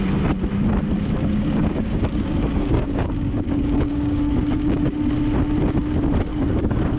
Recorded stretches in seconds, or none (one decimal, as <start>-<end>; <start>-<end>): 0.0-1.2; 5.0-6.3